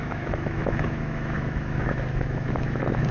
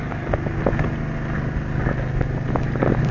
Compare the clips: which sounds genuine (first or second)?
second